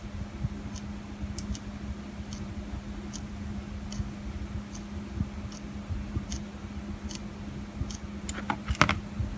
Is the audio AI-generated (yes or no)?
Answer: no